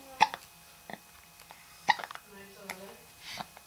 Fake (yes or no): no